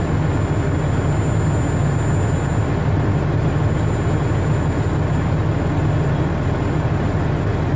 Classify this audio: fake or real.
real